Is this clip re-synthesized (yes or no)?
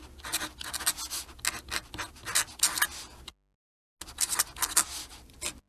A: no